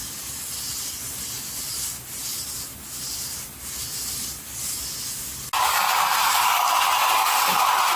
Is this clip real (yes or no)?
yes